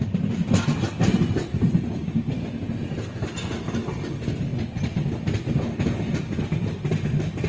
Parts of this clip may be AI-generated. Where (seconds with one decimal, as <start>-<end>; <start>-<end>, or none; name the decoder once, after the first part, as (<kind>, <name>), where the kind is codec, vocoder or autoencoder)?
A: none